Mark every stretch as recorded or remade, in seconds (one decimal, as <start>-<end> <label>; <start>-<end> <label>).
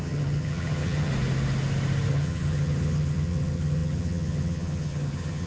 0.0-1.1 remade; 1.1-2.1 recorded; 2.1-5.5 remade